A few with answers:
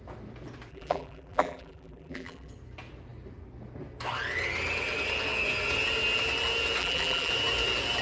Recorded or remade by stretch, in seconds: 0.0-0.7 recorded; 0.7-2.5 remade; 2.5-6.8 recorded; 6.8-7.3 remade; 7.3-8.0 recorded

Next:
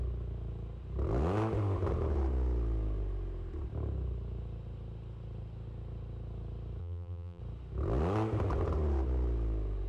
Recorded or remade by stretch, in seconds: 0.0-6.8 recorded; 6.8-7.4 remade; 7.4-9.9 recorded

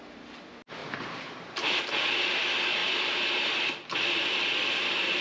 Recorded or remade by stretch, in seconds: 0.0-0.8 recorded; 0.8-2.0 remade; 2.0-2.8 recorded; 2.8-3.6 remade; 3.6-5.2 recorded

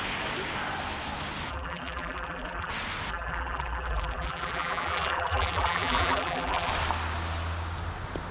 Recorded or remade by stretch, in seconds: 0.0-1.5 recorded; 1.5-2.7 remade; 2.7-3.1 recorded; 3.1-6.7 remade; 6.7-8.3 recorded

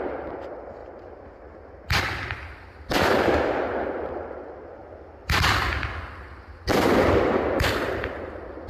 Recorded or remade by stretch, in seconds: 0.0-4.8 recorded; 4.8-5.7 remade; 5.7-8.7 recorded

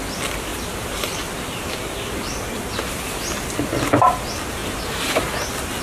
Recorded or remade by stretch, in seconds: 0.0-5.8 recorded

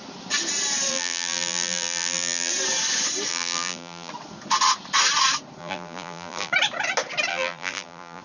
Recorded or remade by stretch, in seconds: 0.0-0.9 recorded; 0.9-2.5 remade; 2.5-3.3 recorded; 3.3-4.1 remade; 4.1-5.6 recorded; 5.6-6.5 remade; 6.5-7.3 recorded; 7.3-8.2 remade

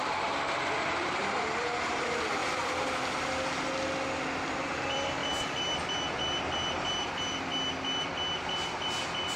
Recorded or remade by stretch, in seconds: 0.0-2.4 remade; 2.4-4.2 recorded; 4.2-5.2 remade; 5.2-5.9 recorded; 5.9-7.5 remade; 7.5-8.4 recorded; 8.4-9.4 remade